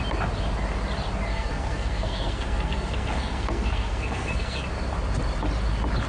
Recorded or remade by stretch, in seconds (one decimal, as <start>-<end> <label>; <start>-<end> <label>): 0.0-1.3 recorded; 1.3-4.6 remade; 4.6-6.1 recorded